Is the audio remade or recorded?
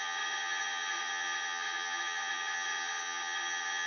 remade